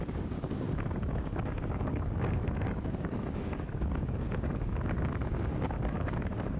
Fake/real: fake